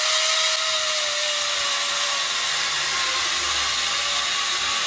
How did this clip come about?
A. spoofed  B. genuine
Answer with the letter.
B